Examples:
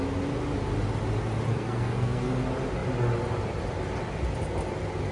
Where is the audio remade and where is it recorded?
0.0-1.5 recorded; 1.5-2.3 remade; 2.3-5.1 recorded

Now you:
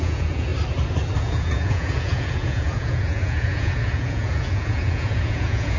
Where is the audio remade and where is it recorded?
0.0-0.5 remade; 0.5-1.2 recorded; 1.2-5.8 remade

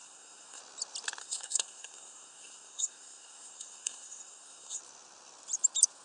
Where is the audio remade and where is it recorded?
0.0-0.6 remade; 0.6-1.2 recorded; 1.2-4.8 remade; 4.8-6.0 recorded

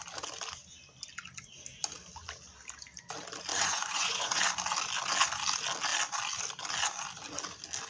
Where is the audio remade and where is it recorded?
0.0-3.5 recorded; 3.5-4.4 remade; 4.4-7.9 recorded

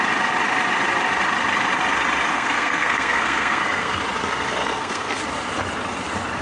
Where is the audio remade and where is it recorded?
0.0-2.3 recorded; 2.3-4.0 remade; 4.0-4.6 recorded; 4.6-5.2 remade; 5.2-6.4 recorded

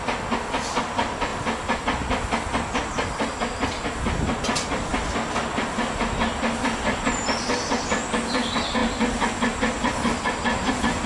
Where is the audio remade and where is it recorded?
0.0-11.1 recorded

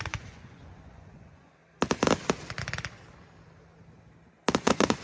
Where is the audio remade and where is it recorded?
0.0-1.6 remade; 1.6-4.6 recorded; 4.6-5.0 remade

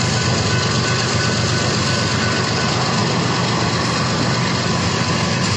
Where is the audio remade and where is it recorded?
0.0-5.6 recorded